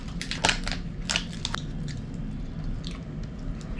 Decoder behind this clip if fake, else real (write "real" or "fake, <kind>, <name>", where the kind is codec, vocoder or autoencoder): real